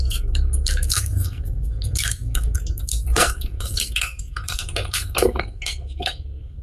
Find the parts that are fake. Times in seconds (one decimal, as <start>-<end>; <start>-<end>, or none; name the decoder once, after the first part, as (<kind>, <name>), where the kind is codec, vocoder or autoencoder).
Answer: 0.0-6.6 (codec, SNAC)

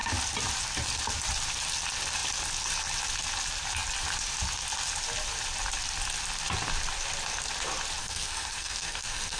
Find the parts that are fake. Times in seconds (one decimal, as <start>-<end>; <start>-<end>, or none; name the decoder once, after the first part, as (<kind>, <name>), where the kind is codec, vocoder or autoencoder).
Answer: 8.0-9.4 (codec, SNAC)

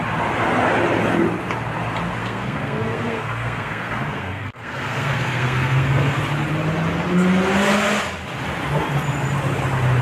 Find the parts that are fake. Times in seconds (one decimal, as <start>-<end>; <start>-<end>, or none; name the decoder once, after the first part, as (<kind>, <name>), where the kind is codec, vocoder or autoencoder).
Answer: 2.2-6.2 (codec, SNAC)

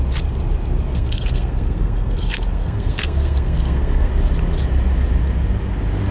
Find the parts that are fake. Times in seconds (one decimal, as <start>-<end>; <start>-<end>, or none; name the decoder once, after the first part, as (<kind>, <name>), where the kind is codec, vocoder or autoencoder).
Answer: 0.9-4.1 (codec, SNAC)

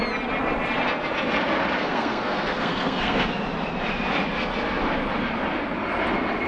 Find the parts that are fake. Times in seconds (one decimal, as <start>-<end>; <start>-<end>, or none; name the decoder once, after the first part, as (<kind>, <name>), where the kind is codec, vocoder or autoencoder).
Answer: 1.8-3.3 (codec, SNAC)

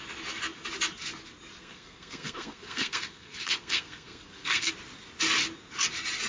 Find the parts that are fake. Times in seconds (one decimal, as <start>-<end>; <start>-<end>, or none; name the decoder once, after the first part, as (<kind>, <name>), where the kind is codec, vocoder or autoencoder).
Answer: 1.6-4.7 (codec, SNAC)

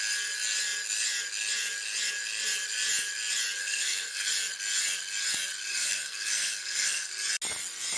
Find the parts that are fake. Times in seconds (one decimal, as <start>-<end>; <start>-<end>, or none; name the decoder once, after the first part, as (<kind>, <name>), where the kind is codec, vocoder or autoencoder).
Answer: 3.6-4.3 (codec, SNAC); 5.7-7.1